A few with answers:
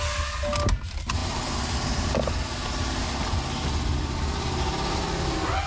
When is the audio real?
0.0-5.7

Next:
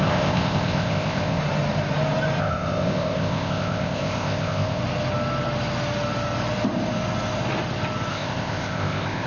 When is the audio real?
1.4-2.4; 4.8-8.1

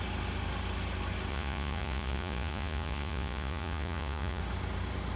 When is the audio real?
0.0-1.3; 4.4-5.2

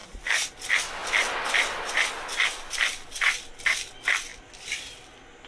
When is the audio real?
0.5-4.3; 4.8-5.5

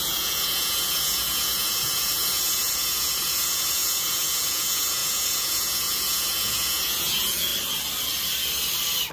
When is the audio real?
7.5-9.1

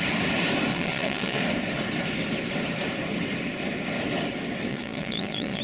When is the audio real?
0.0-0.7; 1.4-4.7